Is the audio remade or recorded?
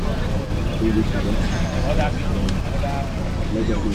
recorded